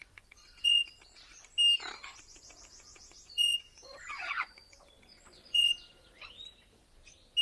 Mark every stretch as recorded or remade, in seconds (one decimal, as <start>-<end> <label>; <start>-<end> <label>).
0.0-1.0 remade; 1.0-2.3 recorded; 2.3-6.3 remade; 6.3-7.4 recorded